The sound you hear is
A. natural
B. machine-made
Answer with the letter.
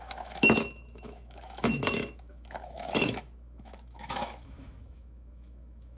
B